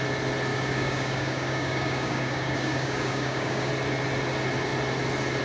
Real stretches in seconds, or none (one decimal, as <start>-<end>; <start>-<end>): 0.0-0.5; 3.7-5.4